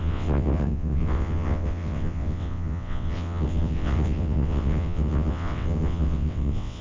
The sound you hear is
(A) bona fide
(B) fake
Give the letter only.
B